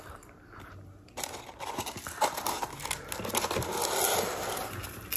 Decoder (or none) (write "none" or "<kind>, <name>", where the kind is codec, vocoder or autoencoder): none